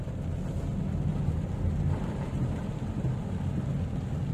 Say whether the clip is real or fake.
real